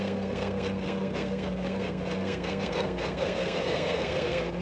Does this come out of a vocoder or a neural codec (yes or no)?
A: yes